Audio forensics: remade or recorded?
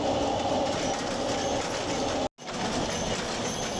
recorded